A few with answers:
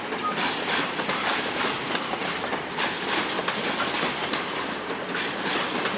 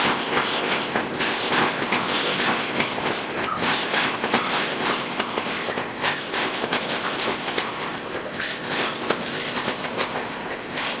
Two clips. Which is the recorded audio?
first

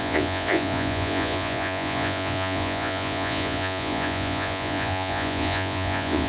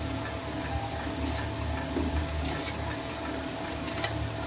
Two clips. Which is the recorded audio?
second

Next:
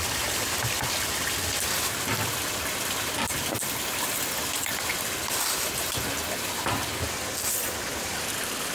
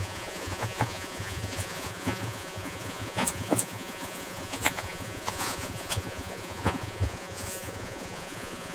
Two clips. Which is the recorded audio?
first